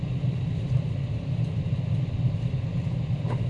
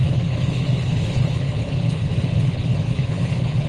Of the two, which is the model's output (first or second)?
second